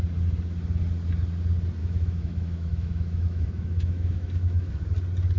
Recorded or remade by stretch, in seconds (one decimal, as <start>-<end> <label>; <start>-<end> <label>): 0.0-1.8 recorded; 1.8-4.7 remade; 4.7-5.4 recorded